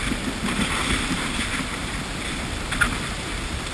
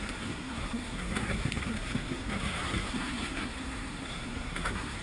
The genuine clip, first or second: first